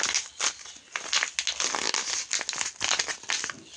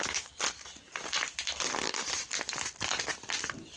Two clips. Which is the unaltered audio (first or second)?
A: first